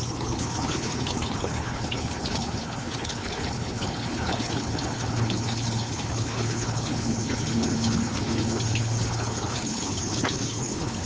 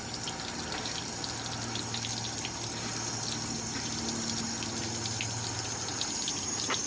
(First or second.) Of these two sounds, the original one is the second